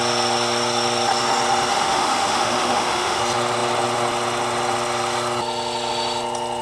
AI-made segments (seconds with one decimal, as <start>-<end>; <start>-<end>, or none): 1.7-3.2